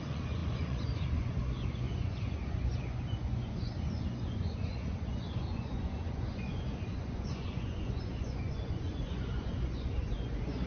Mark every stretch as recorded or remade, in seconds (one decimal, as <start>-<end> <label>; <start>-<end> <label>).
0.0-10.7 remade